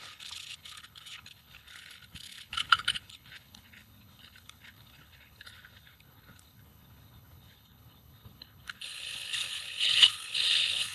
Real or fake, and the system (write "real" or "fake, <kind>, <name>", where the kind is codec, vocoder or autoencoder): fake, codec, HILCodec